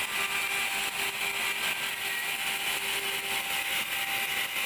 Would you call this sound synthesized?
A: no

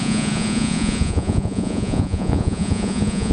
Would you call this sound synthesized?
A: yes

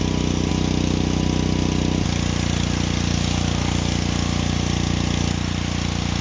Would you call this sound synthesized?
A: no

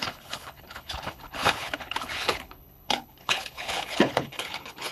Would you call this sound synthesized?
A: yes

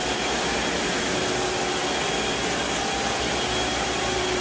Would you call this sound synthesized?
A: no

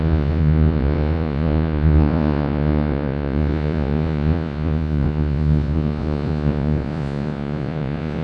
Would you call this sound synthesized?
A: yes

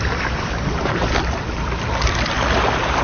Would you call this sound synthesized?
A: no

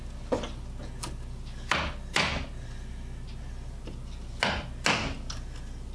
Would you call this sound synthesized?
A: no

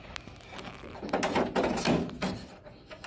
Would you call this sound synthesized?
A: no